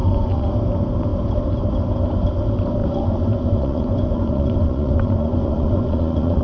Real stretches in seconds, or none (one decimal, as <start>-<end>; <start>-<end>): 0.5-2.8